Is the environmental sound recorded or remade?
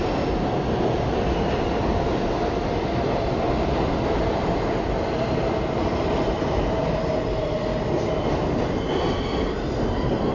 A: recorded